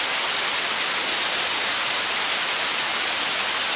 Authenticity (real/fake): real